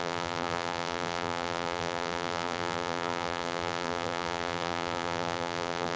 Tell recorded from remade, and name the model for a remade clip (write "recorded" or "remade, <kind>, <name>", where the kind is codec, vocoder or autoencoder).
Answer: remade, vocoder, BigVGAN v2